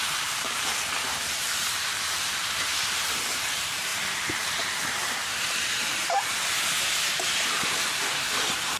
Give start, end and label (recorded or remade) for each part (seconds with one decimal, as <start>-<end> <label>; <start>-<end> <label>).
0.0-8.8 remade

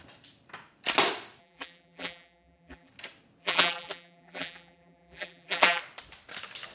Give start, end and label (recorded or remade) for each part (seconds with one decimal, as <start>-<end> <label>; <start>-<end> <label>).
0.0-1.4 recorded; 1.4-2.9 remade; 2.9-3.4 recorded; 3.4-5.8 remade; 5.8-6.7 recorded

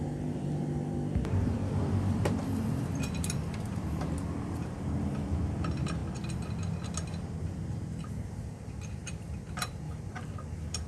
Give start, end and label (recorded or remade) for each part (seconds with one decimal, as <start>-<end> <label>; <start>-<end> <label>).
0.0-6.0 remade; 6.0-7.4 recorded; 7.4-10.9 remade